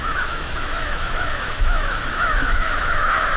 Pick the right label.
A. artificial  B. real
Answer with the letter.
A